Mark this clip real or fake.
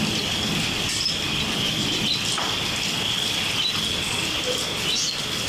real